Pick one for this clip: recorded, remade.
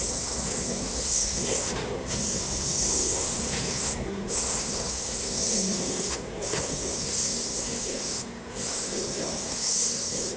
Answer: remade